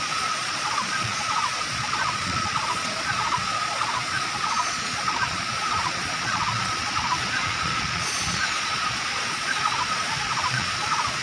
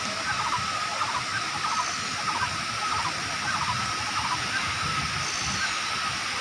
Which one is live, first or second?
second